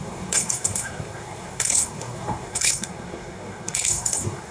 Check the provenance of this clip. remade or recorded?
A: remade